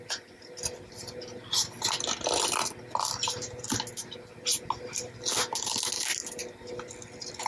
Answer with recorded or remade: recorded